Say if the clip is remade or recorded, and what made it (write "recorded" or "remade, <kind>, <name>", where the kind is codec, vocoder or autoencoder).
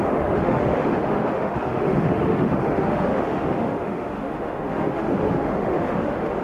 remade, autoencoder, DAC-VAE